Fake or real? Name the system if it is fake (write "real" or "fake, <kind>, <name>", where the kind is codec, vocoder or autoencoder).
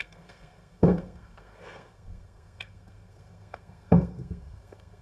fake, codec, SNAC